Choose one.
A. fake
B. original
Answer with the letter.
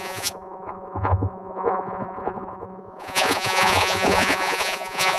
A